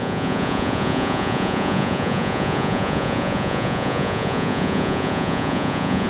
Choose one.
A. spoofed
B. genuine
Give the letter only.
A